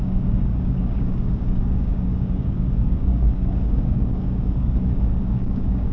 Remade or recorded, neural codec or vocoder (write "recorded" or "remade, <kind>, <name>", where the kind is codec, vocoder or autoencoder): remade, codec, DAC